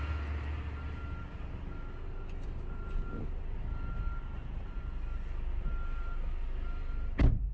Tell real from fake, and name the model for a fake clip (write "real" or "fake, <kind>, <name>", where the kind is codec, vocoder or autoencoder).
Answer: real